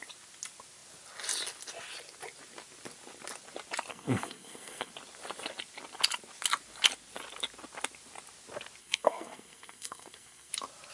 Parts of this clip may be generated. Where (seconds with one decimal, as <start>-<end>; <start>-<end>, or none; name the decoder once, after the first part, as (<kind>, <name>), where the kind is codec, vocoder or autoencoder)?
3.9-4.9 (codec, SNAC); 8.8-10.5